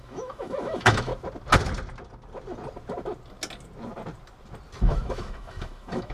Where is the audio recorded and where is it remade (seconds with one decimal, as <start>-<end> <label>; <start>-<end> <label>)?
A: 0.0-1.1 remade; 1.1-4.8 recorded; 4.8-6.1 remade